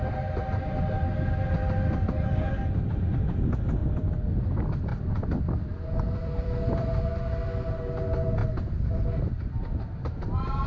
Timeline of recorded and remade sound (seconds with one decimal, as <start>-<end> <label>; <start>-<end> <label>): 0.0-3.8 recorded; 3.8-4.3 remade; 4.3-4.9 recorded; 4.9-7.0 remade; 7.0-8.4 recorded; 8.4-9.2 remade; 9.2-10.7 recorded